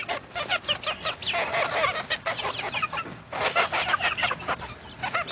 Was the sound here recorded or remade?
recorded